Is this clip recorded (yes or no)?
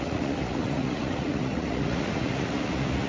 no